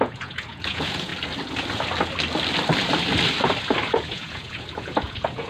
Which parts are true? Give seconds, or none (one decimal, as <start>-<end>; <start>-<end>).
1.1-3.9